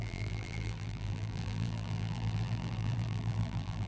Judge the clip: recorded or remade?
remade